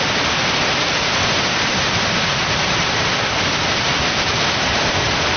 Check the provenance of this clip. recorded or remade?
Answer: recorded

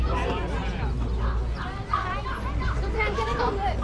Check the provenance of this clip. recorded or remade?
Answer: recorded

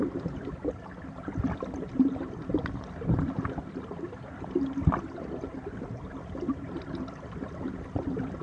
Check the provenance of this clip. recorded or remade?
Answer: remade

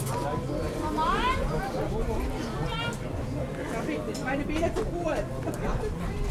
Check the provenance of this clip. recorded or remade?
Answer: recorded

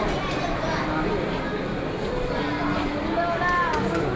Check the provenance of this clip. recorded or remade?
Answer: recorded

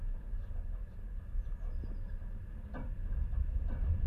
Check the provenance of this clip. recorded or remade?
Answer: recorded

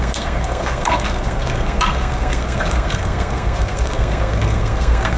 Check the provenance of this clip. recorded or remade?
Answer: remade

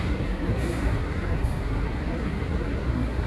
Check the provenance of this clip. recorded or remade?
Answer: remade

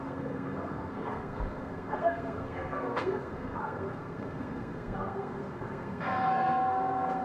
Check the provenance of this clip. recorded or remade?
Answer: remade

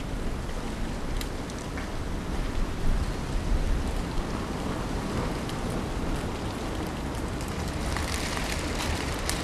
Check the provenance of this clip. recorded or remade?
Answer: recorded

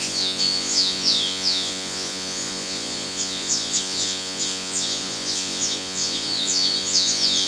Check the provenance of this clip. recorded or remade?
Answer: remade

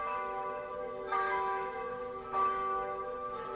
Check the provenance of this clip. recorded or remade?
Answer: remade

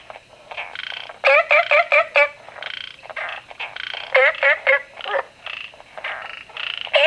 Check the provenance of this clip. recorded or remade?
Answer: recorded